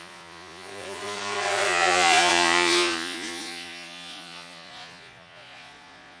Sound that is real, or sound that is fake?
fake